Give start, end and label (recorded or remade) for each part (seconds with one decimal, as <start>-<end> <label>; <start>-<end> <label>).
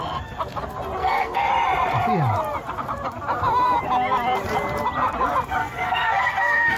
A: 0.0-1.0 recorded; 1.0-1.5 remade; 1.5-5.6 recorded; 5.6-6.8 remade